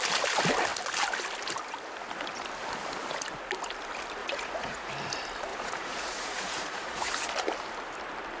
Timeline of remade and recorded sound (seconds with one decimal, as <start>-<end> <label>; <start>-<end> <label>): 0.0-4.2 recorded; 4.2-4.9 remade; 4.9-5.5 recorded; 5.5-7.1 remade; 7.1-8.4 recorded